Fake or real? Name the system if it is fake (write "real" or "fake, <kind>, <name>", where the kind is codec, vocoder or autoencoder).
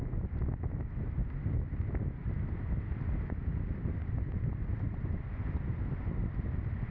real